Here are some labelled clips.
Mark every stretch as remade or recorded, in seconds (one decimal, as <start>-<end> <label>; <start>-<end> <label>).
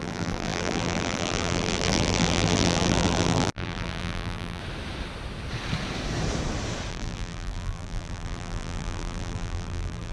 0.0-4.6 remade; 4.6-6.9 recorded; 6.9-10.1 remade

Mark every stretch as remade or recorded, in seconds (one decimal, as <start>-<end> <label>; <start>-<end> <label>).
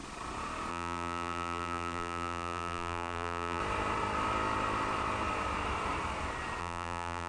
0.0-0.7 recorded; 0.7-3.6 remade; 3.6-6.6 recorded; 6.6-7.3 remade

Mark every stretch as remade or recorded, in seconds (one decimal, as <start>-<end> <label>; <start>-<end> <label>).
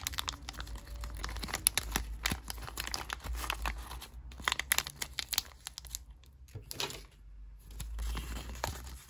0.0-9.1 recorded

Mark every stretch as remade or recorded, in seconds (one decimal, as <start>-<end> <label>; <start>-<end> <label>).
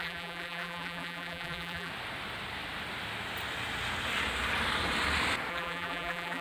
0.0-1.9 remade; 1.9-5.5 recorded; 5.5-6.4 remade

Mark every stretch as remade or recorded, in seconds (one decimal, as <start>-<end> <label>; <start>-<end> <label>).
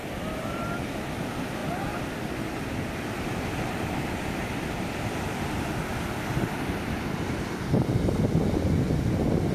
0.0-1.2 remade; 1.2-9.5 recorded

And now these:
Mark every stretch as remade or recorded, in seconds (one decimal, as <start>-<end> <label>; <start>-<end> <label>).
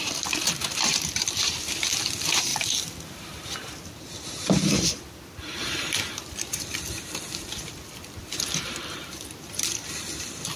0.0-2.5 remade; 2.5-3.8 recorded; 3.8-10.6 remade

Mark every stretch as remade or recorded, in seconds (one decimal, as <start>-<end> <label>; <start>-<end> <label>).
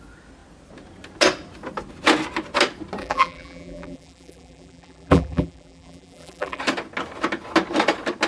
0.0-3.0 recorded; 3.0-6.6 remade; 6.6-8.3 recorded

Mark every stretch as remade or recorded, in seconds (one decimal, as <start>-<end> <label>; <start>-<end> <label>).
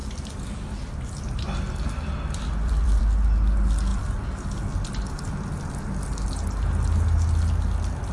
0.0-3.0 remade; 3.0-8.1 recorded